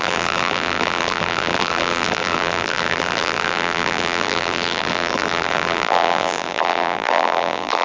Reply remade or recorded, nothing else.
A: remade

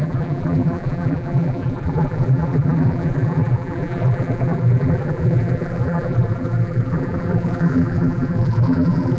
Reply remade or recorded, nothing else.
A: remade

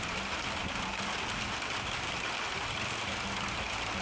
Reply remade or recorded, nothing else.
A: remade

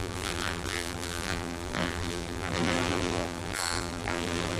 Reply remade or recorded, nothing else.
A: remade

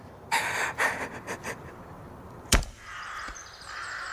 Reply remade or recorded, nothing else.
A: remade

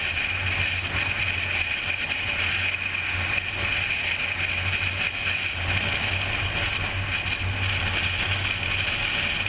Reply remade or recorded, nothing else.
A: recorded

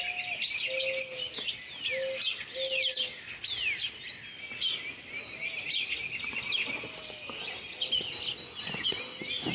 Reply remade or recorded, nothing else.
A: recorded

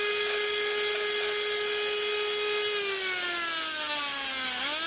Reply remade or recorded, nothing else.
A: recorded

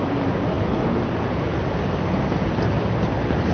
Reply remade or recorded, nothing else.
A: recorded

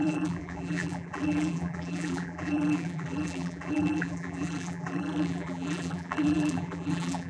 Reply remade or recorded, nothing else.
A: remade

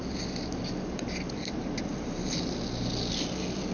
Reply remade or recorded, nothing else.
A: recorded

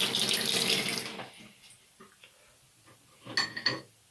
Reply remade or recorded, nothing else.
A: recorded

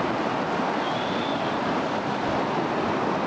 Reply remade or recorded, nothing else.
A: recorded